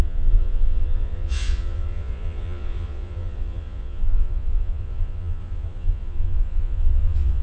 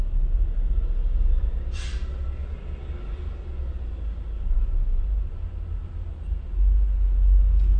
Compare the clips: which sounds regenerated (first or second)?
first